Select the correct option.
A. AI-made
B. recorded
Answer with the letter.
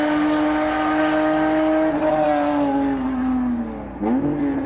B